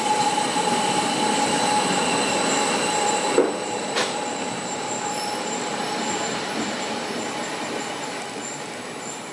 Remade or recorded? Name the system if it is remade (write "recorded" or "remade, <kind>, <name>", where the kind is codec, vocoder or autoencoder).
remade, vocoder, BigVGAN v2